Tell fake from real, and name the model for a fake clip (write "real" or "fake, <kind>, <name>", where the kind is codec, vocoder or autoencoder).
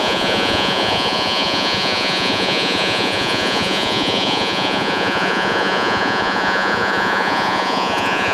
fake, vocoder, Vocos